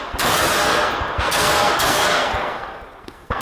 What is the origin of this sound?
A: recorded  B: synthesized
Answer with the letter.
B